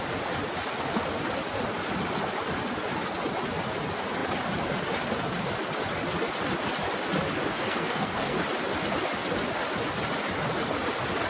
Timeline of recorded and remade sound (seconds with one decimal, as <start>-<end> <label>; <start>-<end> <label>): 0.0-7.5 recorded; 7.5-8.4 remade; 8.4-11.3 recorded